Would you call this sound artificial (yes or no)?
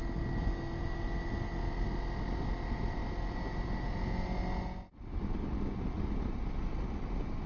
no